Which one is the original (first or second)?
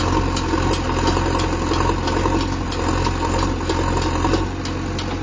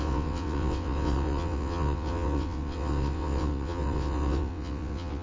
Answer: first